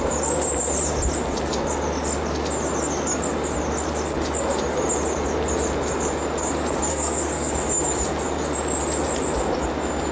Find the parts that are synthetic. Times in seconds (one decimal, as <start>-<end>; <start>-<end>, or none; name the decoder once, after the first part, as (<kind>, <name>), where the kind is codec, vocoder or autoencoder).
6.9-7.5 (codec, SNAC)